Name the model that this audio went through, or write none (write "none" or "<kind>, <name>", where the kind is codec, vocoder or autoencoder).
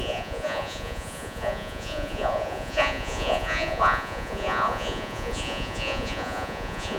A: vocoder, Vocos